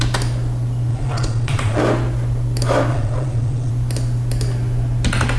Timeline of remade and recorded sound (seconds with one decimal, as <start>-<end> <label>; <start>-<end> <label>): 0.0-0.9 recorded; 0.9-1.8 remade; 1.8-2.9 recorded; 2.9-3.7 remade; 3.7-5.4 recorded